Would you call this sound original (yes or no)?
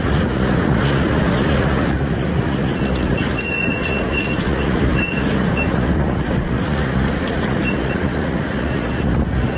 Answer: no